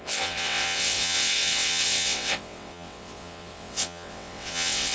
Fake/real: fake